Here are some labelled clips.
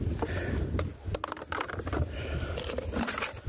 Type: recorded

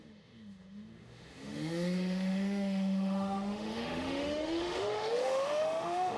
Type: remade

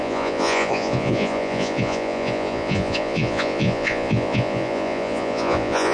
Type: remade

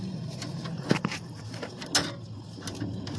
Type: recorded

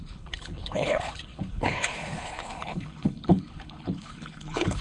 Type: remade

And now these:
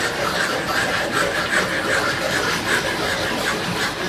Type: recorded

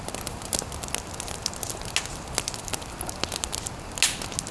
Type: recorded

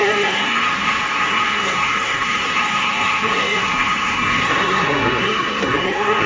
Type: remade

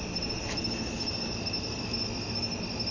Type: recorded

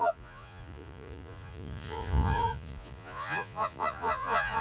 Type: remade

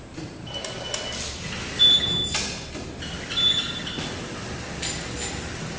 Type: recorded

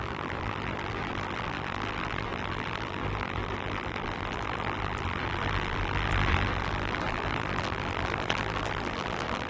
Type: remade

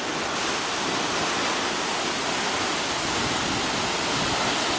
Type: recorded